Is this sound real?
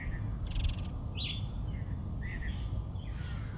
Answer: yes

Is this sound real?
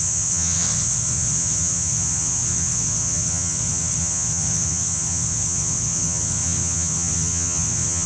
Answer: no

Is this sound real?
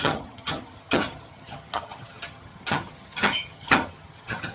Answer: no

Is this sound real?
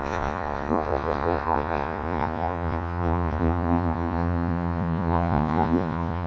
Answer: no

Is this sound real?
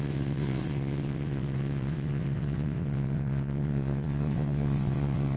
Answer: no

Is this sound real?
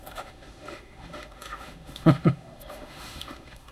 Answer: no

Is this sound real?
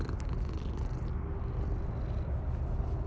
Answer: yes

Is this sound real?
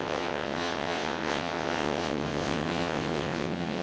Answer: no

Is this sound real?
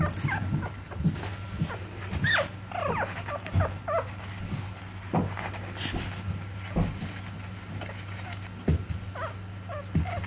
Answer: yes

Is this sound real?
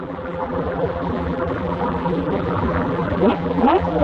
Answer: no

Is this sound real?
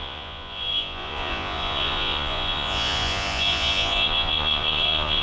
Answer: no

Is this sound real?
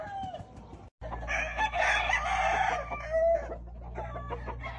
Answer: yes